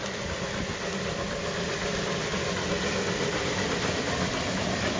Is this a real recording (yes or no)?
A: yes